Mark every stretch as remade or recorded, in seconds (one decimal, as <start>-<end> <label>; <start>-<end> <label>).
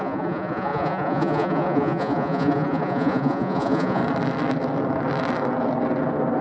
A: 0.0-4.0 remade; 4.0-6.4 recorded